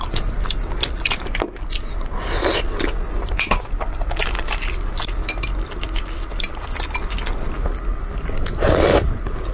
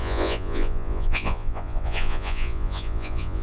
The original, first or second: first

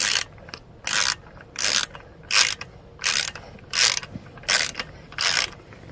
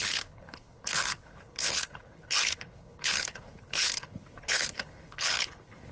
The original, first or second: first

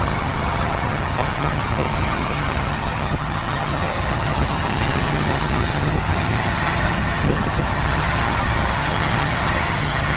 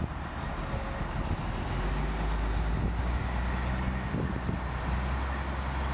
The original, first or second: second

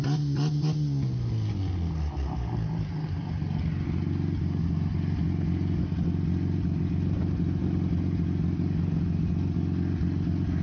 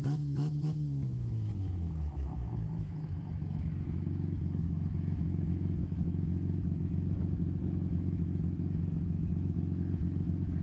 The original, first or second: first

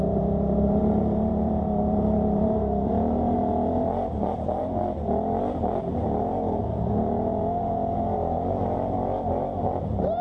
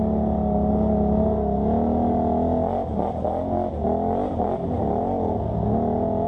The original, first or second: second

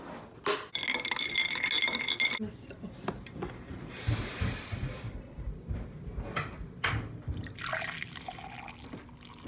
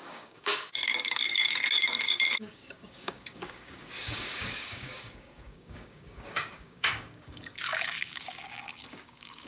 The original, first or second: first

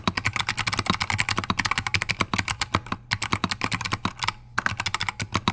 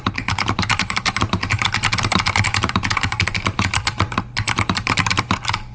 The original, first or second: first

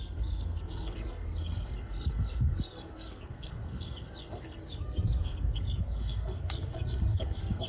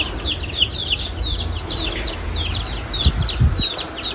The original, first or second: second